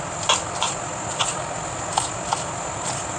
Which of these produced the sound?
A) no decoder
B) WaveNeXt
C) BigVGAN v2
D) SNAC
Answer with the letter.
A